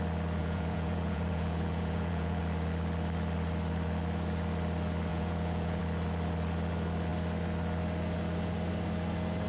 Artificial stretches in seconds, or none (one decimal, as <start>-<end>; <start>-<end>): 0.4-2.4; 5.1-5.8